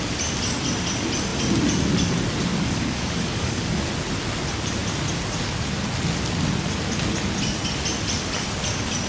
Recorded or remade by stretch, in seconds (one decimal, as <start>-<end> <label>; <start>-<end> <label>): 0.0-2.5 recorded; 2.5-3.8 remade; 3.8-9.1 recorded